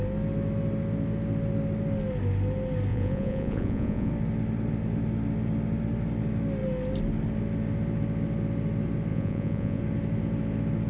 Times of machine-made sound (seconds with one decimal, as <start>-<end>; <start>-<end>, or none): 2.9-4.1; 9.1-9.8